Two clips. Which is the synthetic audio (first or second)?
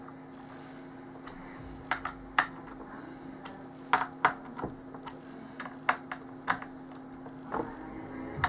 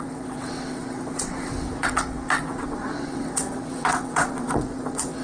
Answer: second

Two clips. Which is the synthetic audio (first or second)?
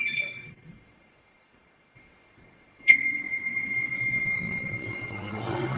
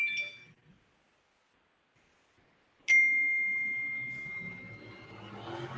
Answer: first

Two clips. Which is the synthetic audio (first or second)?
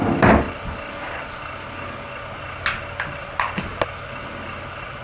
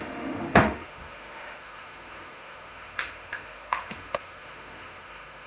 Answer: second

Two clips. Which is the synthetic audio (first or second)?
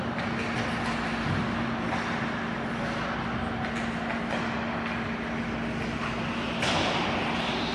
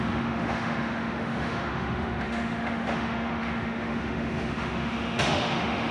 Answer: second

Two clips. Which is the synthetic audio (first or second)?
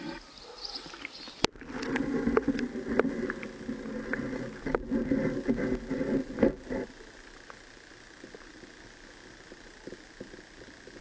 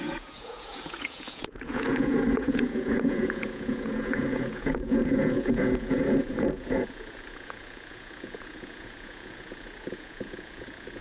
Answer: second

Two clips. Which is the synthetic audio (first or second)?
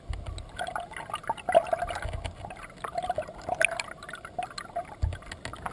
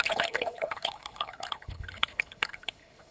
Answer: second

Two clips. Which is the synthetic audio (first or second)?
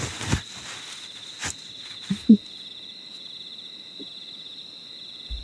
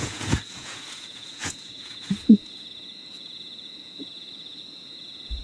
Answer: second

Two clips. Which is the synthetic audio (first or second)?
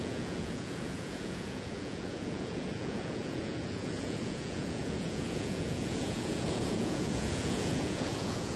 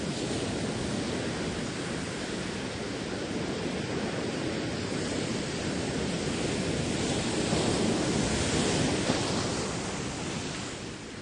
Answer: first